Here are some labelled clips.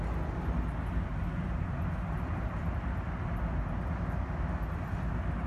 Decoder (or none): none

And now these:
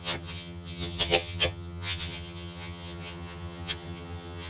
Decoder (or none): vocoder, HiFi-GAN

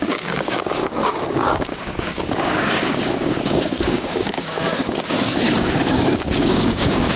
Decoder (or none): codec, DAC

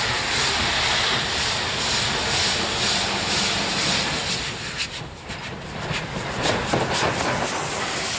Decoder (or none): none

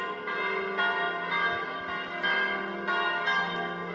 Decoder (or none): none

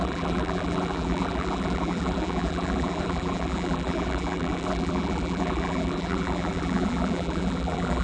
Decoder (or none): vocoder, BigVGAN v2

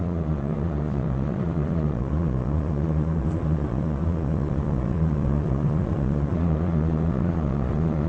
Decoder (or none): vocoder, Vocos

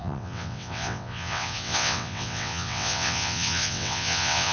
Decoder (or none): vocoder, WaveNeXt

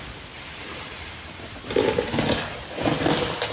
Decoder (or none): none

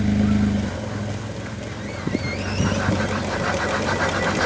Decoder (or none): none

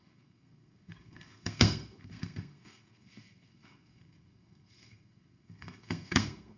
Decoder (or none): codec, SNAC